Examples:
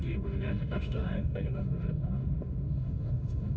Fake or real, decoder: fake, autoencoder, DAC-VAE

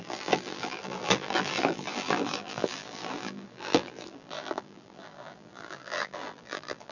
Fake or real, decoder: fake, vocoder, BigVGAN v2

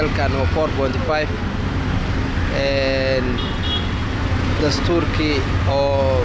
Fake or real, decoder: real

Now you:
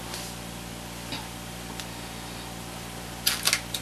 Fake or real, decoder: real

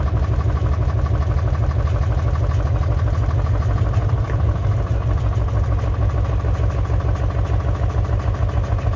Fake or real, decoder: real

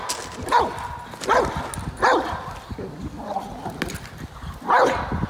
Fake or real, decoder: real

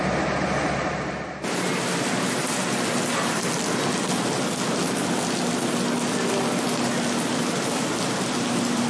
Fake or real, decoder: real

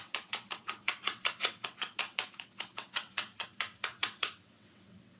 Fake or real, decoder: fake, vocoder, WaveNeXt